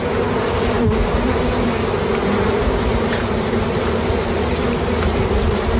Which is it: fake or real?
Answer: real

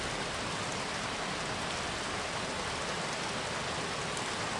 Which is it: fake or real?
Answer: real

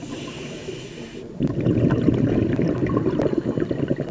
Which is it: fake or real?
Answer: real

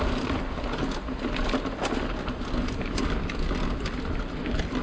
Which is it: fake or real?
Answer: real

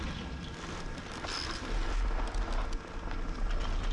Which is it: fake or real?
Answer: real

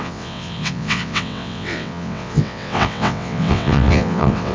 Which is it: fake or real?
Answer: fake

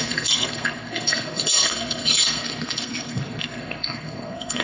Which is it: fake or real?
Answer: fake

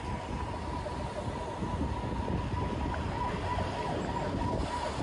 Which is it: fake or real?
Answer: real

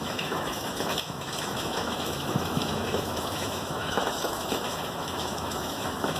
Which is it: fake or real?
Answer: fake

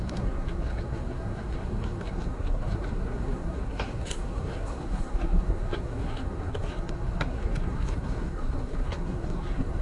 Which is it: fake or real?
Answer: fake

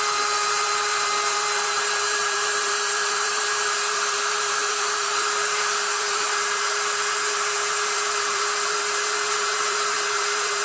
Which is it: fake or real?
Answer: fake